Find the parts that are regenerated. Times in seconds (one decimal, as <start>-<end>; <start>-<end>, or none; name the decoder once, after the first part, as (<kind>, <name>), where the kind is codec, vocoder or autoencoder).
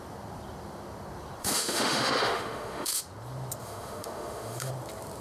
1.4-3.0 (autoencoder, DAC-VAE); 3.6-4.7